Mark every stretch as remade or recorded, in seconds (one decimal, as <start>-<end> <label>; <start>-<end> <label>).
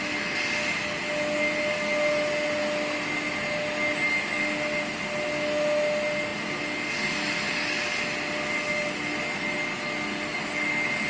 0.0-11.1 recorded